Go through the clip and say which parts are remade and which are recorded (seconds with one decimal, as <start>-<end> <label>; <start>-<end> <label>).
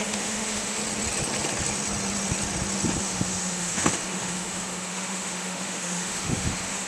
0.0-0.8 remade; 0.8-3.0 recorded; 3.0-6.9 remade